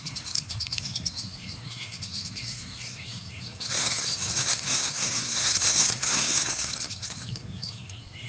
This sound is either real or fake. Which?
fake